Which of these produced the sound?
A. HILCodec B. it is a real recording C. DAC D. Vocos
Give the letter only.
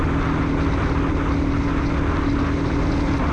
B